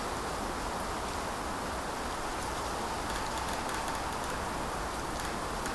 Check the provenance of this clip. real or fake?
real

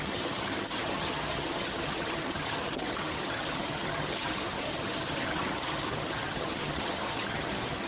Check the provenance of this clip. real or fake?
fake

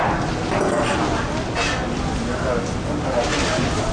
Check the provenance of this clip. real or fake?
real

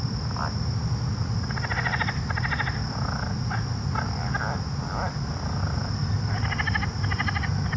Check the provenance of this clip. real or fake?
real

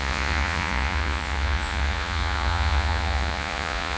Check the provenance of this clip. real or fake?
fake